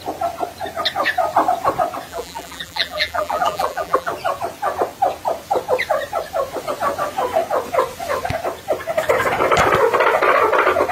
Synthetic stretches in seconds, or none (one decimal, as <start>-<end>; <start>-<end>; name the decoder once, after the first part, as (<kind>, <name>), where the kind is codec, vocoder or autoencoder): 2.1-4.1 (vocoder, BigVGAN v2)